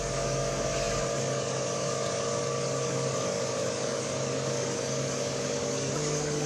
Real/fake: fake